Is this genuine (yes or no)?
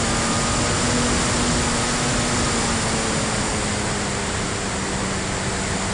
yes